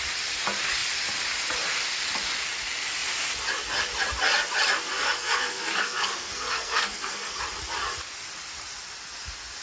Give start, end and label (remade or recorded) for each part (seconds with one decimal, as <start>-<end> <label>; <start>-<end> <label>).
0.0-4.9 recorded; 4.9-7.4 remade; 7.4-9.6 recorded